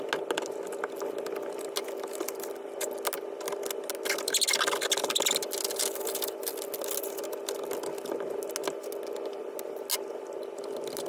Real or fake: real